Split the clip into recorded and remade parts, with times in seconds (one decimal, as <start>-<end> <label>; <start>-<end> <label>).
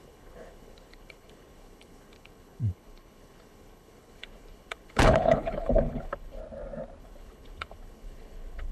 0.0-6.4 remade; 6.4-7.0 recorded; 7.0-8.7 remade